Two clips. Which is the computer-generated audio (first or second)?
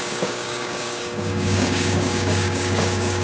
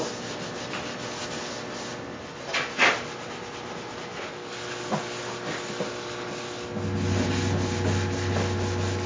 first